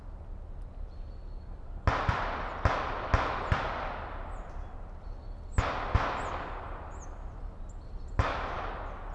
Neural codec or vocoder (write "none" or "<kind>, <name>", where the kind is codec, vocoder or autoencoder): none